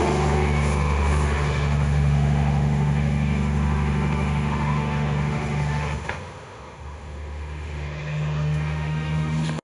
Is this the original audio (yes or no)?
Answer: no